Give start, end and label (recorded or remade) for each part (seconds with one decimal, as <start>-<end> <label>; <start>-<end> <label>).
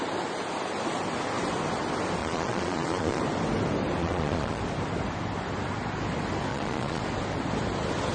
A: 0.0-2.2 recorded; 2.2-3.2 remade; 3.2-4.0 recorded; 4.0-4.6 remade; 4.6-6.5 recorded; 6.5-7.0 remade; 7.0-8.1 recorded